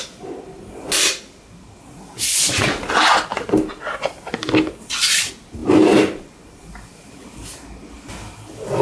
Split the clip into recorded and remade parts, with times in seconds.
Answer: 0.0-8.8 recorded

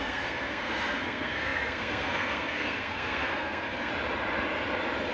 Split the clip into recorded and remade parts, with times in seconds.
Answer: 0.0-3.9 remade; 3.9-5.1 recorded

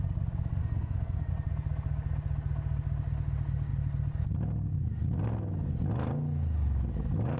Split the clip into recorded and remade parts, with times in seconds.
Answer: 0.0-0.6 recorded; 0.6-1.3 remade; 1.3-7.4 recorded

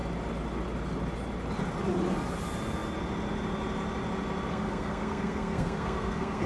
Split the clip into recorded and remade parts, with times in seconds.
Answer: 0.0-4.5 recorded; 4.5-6.5 remade

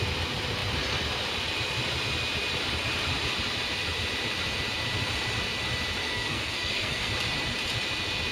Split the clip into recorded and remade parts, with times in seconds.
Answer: 0.0-6.0 recorded; 6.0-7.1 remade; 7.1-8.3 recorded

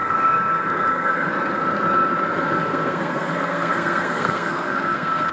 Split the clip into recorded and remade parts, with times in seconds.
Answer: 0.0-1.3 remade; 1.3-2.6 recorded; 2.6-5.3 remade

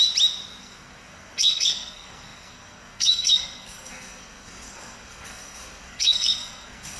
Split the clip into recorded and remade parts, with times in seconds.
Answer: 0.0-0.6 recorded; 0.6-7.0 remade

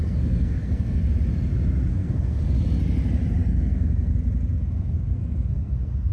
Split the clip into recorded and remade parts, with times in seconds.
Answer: 0.0-1.0 remade; 1.0-1.9 recorded; 1.9-2.4 remade; 2.4-3.4 recorded; 3.4-4.1 remade; 4.1-4.6 recorded; 4.6-6.1 remade